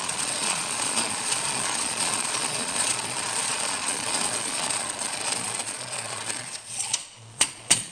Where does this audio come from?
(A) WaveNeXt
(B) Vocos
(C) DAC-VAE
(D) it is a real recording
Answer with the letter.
B